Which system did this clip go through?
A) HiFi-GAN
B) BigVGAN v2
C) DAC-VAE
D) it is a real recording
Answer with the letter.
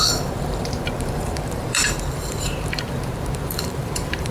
B